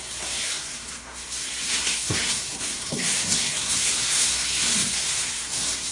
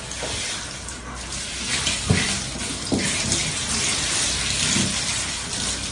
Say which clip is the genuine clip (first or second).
second